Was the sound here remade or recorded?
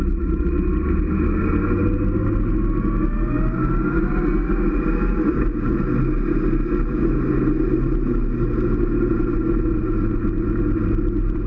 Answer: recorded